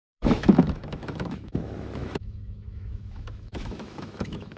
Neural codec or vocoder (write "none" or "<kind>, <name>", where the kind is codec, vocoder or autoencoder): autoencoder, DAC-VAE